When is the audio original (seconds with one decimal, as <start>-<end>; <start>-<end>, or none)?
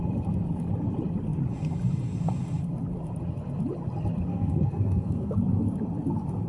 0.0-4.3; 5.3-6.5